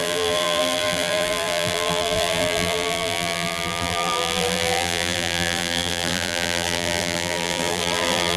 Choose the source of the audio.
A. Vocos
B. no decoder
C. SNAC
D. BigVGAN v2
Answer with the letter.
D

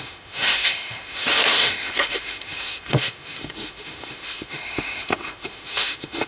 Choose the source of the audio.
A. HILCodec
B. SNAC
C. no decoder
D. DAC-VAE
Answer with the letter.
D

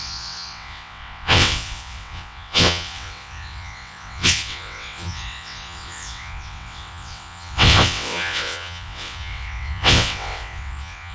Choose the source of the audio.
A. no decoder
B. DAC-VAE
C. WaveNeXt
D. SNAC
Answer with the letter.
C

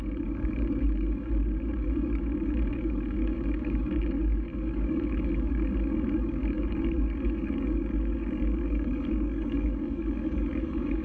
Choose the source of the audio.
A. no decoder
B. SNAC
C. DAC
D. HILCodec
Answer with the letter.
C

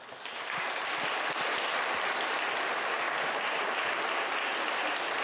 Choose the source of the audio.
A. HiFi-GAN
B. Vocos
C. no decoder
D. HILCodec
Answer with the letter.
C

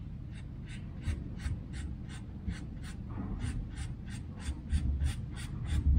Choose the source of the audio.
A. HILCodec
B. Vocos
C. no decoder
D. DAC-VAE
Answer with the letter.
C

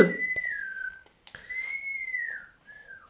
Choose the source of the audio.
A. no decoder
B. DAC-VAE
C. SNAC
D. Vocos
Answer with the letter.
A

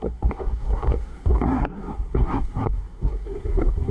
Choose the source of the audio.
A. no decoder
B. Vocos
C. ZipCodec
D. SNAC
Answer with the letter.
D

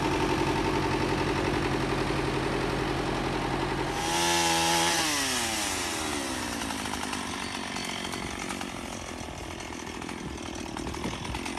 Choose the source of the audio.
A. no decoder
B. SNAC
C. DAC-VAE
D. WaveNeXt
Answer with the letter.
A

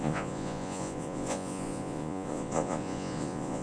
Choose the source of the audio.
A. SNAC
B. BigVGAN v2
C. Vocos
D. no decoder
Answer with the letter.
C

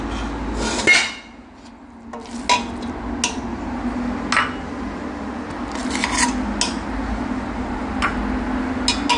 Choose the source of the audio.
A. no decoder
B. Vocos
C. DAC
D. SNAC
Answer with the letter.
A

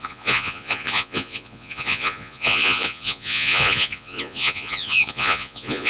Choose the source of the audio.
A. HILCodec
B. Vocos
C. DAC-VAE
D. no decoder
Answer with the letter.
B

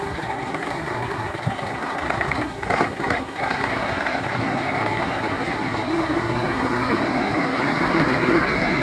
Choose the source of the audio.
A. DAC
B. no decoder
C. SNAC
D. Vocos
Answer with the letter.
C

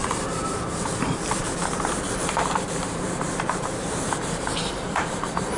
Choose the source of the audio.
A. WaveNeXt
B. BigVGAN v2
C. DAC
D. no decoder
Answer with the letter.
B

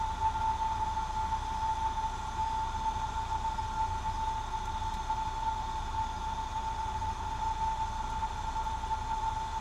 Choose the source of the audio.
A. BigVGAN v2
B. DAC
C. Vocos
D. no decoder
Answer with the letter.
D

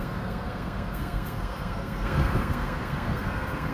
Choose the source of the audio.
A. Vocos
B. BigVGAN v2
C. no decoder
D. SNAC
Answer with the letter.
D